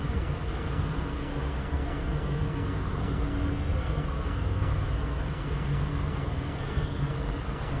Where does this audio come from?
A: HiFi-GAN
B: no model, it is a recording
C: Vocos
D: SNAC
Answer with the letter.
D